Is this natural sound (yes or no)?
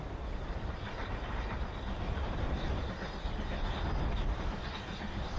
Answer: yes